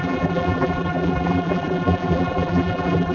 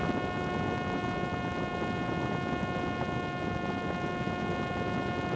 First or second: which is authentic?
second